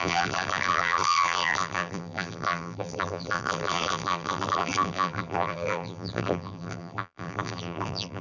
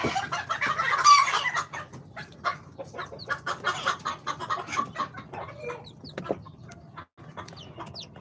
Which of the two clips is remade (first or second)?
first